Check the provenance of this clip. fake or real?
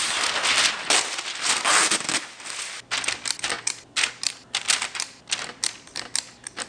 real